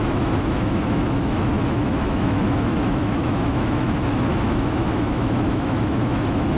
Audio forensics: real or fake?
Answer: fake